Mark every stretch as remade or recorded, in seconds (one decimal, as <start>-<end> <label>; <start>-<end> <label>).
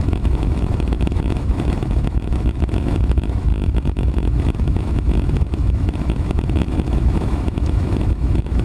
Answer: 0.0-8.6 remade